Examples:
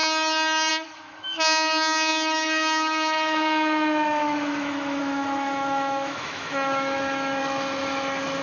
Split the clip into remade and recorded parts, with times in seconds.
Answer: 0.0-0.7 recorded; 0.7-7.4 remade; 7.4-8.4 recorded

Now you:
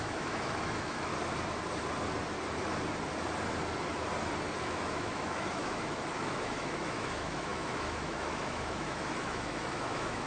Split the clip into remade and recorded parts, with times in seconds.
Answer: 0.0-1.1 remade; 1.1-4.6 recorded; 4.6-10.3 remade

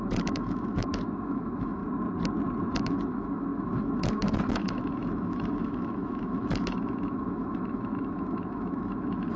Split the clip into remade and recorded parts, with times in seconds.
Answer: 0.0-1.8 remade; 1.8-2.8 recorded; 2.8-9.4 remade